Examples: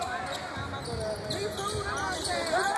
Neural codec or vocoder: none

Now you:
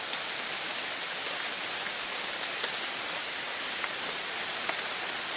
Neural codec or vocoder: none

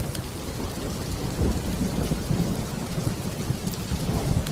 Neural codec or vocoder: none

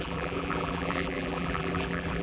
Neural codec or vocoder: vocoder, BigVGAN v2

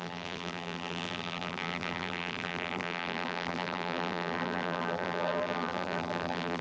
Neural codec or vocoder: vocoder, BigVGAN v2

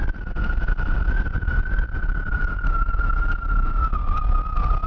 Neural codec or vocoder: none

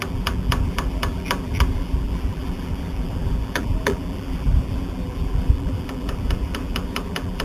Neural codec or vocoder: vocoder, BigVGAN v2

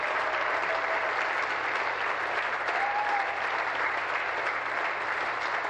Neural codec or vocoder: vocoder, BigVGAN v2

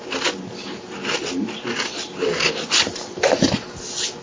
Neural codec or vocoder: none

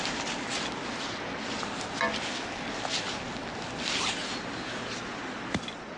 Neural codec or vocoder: none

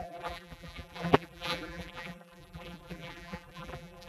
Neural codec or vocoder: vocoder, BigVGAN v2